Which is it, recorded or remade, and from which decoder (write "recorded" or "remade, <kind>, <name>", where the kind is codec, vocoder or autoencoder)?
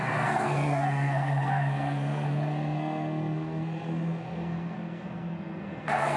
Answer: remade, codec, SNAC